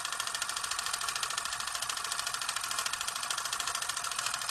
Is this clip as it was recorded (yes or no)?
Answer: yes